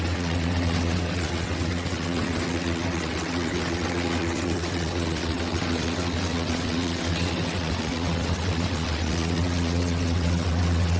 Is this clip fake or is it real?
fake